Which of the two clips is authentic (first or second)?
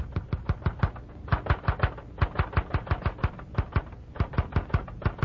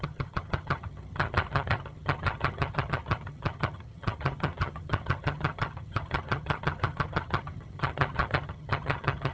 first